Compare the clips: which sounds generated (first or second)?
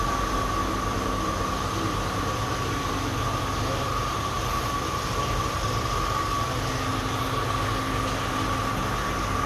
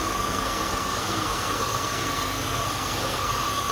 second